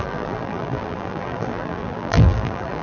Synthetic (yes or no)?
yes